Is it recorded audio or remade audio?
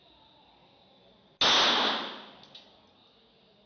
recorded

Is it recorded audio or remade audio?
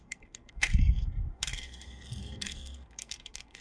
remade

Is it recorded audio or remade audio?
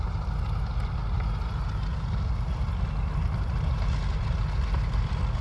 recorded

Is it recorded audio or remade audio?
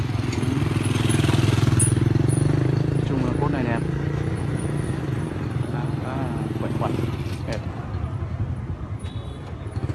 recorded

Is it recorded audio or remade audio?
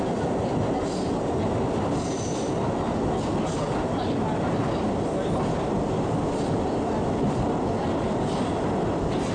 recorded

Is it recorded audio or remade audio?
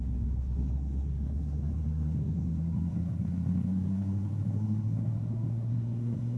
remade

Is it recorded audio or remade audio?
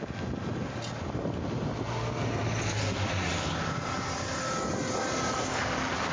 recorded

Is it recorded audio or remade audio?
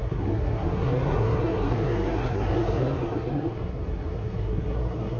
remade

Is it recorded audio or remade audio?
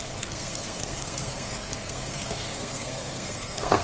remade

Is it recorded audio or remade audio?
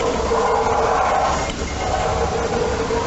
recorded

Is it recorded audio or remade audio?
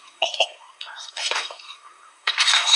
remade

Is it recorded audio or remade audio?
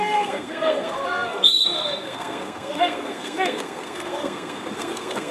remade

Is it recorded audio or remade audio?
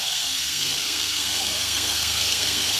remade